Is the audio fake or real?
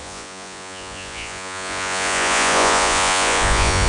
fake